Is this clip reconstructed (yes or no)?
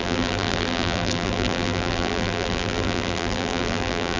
yes